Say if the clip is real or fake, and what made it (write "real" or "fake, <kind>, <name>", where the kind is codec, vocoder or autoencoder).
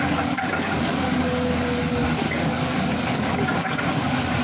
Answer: fake, codec, DAC